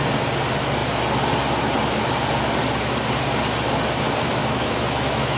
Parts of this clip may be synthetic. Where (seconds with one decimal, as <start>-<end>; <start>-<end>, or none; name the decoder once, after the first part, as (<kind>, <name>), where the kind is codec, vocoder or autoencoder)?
4.4-5.4 (autoencoder, DAC-VAE)